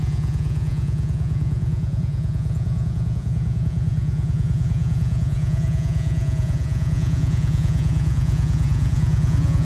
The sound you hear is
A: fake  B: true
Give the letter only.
A